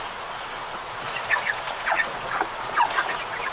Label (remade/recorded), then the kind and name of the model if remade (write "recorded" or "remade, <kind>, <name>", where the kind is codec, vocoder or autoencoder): remade, vocoder, Vocos